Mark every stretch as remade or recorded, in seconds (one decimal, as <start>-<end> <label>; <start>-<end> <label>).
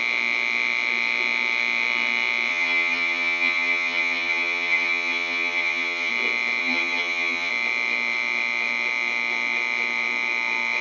0.0-2.5 recorded; 2.5-6.1 remade; 6.1-6.6 recorded; 6.6-7.5 remade; 7.5-10.8 recorded